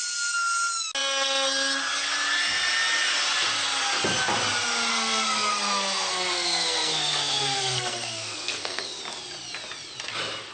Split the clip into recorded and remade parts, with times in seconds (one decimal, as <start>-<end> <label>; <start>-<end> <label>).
0.0-4.9 recorded; 4.9-9.0 remade; 9.0-10.5 recorded

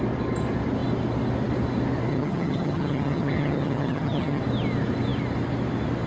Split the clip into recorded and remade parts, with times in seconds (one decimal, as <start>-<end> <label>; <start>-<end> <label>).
0.0-2.1 recorded; 2.1-4.4 remade; 4.4-6.1 recorded

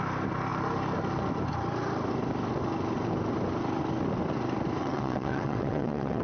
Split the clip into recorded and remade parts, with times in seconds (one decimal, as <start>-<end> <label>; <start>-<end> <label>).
0.0-4.8 recorded; 4.8-6.2 remade

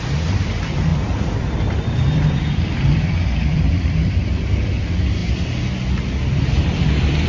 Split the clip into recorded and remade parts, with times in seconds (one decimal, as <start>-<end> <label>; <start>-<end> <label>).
0.0-5.2 remade; 5.2-6.0 recorded; 6.0-7.3 remade

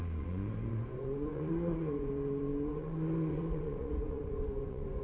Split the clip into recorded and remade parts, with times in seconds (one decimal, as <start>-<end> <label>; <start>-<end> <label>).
0.0-5.0 remade